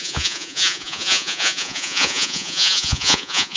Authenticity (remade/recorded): remade